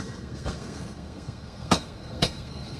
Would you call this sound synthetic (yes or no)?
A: yes